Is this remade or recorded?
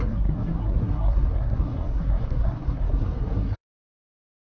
remade